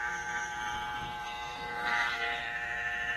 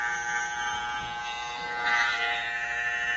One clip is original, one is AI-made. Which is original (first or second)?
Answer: second